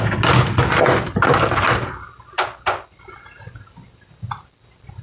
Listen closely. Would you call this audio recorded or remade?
recorded